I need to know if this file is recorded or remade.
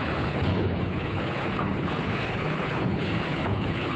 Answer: remade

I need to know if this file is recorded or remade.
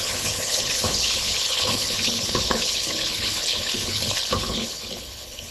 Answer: remade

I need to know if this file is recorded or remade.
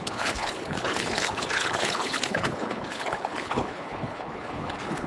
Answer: remade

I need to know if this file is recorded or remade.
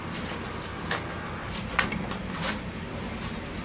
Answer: recorded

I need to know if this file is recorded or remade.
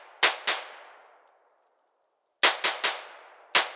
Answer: recorded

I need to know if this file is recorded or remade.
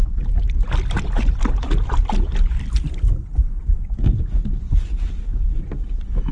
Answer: recorded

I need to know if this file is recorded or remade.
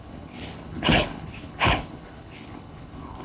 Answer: remade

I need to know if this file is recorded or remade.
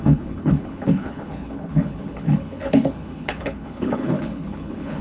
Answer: remade